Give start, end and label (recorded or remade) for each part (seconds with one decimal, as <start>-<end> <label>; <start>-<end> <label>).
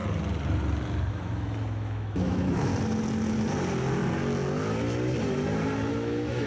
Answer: 0.0-1.1 recorded; 1.1-2.7 remade; 2.7-5.9 recorded; 5.9-6.5 remade